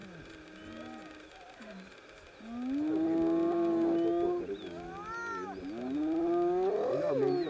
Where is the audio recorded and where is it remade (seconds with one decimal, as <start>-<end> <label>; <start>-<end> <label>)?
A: 0.0-2.3 remade; 2.3-7.5 recorded